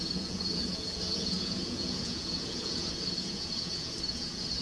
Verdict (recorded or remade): remade